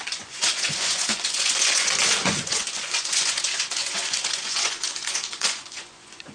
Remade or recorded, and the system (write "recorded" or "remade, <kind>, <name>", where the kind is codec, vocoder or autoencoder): remade, vocoder, Vocos